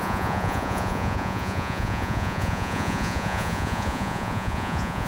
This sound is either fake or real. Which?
fake